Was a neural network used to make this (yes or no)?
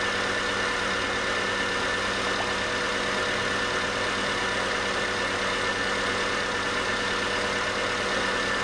no